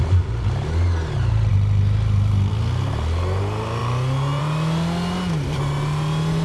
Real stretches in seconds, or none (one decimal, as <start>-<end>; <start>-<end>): 0.0-6.4